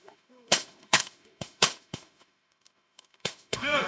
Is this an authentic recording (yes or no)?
no